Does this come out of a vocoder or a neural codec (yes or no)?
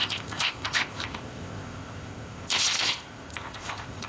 yes